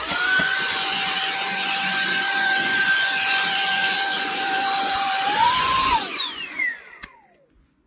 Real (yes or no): no